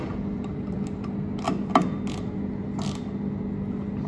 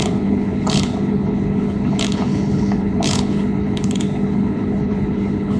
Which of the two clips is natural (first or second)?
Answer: first